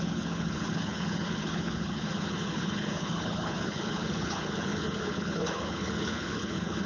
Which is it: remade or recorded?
remade